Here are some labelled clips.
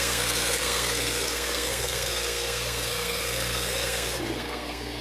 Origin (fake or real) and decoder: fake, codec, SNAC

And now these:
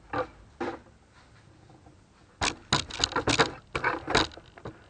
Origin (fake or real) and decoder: real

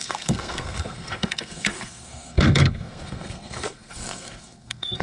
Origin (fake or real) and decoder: fake, codec, SNAC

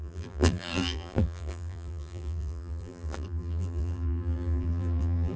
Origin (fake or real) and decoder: fake, vocoder, BigVGAN v2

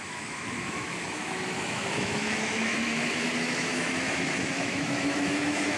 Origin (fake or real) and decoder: fake, autoencoder, DAC-VAE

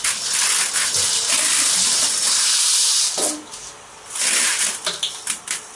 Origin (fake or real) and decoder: real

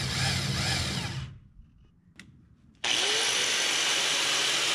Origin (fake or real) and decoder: real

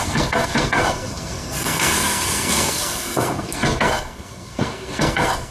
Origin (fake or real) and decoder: fake, codec, SNAC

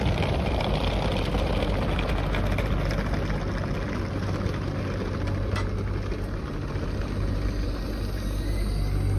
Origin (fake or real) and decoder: real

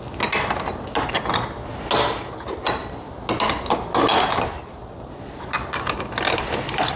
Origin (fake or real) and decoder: real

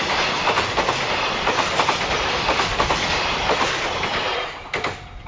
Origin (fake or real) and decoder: fake, vocoder, BigVGAN v2